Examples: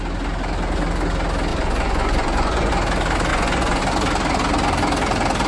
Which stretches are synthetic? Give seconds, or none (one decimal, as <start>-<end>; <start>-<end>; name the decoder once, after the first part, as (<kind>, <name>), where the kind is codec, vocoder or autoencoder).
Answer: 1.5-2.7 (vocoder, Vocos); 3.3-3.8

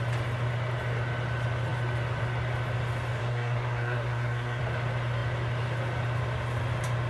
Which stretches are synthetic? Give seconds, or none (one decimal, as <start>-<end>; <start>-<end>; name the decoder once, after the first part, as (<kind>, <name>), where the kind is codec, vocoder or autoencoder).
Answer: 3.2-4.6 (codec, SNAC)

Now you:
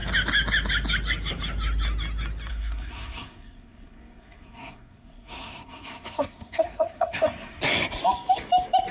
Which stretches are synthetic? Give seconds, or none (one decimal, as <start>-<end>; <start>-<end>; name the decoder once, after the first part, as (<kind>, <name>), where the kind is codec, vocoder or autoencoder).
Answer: 2.5-7.6 (codec, SNAC)

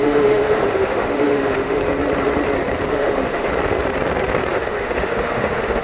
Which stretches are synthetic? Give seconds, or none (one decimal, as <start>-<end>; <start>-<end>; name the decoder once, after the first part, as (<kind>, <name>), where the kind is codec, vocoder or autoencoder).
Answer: 0.0-1.8 (autoencoder, DAC-VAE); 2.9-3.5; 4.5-5.8

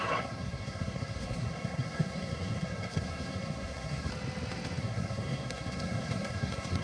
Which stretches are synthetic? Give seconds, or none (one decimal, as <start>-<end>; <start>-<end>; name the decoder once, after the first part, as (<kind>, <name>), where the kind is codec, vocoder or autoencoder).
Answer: 0.0-4.1 (codec, SNAC); 4.8-6.8